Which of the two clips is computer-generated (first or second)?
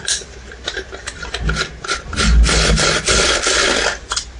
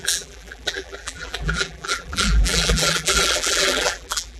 second